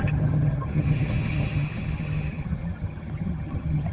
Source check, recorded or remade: remade